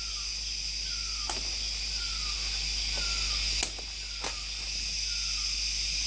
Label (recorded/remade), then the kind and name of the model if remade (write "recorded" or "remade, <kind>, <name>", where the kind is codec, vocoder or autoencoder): recorded